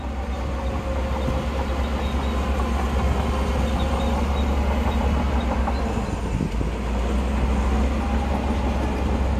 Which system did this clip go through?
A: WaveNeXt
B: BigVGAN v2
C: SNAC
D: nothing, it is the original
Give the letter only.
D